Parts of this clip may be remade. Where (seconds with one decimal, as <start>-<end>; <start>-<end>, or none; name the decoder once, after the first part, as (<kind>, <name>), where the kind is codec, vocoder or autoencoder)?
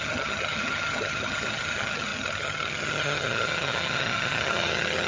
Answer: 0.0-5.1 (vocoder, HiFi-GAN)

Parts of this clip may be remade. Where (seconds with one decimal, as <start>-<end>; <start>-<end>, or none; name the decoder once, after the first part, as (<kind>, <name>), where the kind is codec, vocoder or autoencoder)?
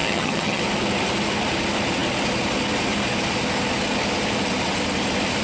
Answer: 0.0-0.6 (vocoder, HiFi-GAN)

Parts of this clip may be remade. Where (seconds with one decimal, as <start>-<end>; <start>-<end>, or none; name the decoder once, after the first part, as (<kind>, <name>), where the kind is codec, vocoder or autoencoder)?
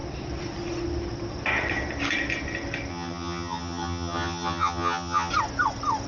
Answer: 2.9-5.3 (vocoder, HiFi-GAN)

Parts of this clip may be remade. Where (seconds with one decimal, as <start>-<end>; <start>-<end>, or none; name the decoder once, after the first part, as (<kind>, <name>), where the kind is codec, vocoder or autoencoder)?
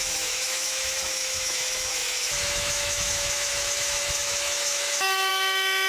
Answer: 0.0-5.9 (autoencoder, DAC-VAE)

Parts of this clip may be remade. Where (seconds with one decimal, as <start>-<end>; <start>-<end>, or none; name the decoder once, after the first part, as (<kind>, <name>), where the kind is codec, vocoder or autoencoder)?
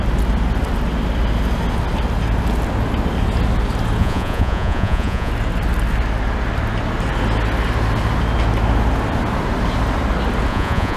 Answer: 4.0-5.3 (vocoder, Vocos); 10.5-11.0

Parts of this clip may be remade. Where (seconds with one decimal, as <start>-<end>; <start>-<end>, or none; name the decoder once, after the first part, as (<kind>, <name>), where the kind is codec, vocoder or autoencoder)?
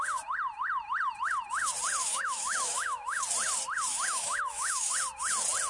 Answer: 2.0-3.2 (autoencoder, DAC-VAE); 3.9-4.9